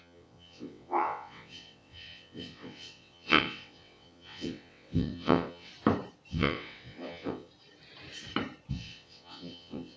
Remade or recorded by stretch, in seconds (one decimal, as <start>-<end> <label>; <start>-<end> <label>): 0.0-5.7 remade; 5.7-6.3 recorded; 6.3-7.5 remade; 7.5-8.7 recorded; 8.7-10.0 remade